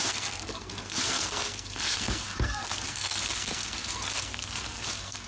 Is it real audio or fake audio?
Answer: fake